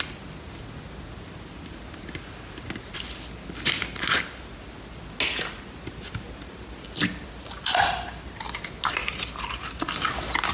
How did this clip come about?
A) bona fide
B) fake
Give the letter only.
A